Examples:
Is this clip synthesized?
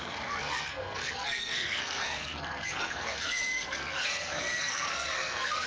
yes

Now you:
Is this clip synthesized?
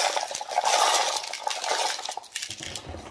no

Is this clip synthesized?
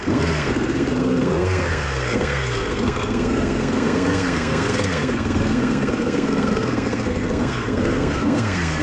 yes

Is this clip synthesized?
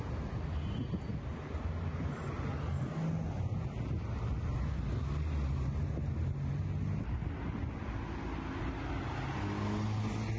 no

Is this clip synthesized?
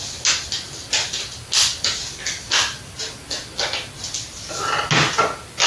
no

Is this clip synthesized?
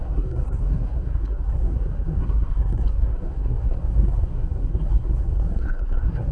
yes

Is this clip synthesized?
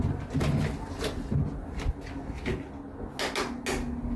no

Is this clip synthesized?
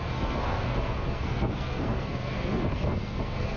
yes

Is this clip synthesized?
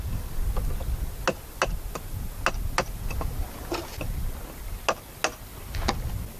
no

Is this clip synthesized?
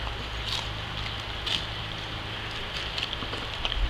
no